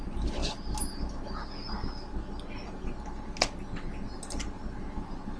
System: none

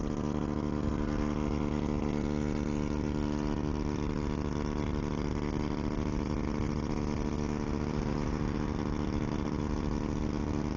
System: none